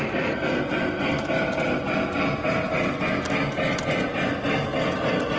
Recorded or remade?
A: recorded